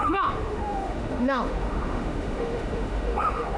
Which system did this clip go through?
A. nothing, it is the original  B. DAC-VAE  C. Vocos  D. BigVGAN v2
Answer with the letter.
B